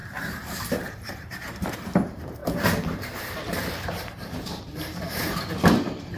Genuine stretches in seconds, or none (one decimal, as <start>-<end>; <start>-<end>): 2.4-3.2